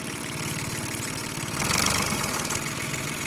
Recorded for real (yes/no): yes